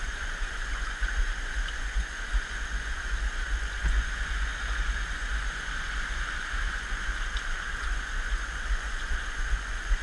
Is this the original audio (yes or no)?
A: no